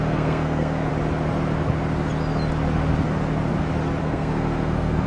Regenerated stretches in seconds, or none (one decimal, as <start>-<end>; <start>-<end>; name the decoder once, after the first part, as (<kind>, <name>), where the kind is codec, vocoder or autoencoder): 0.0-0.9 (codec, SNAC); 4.0-5.1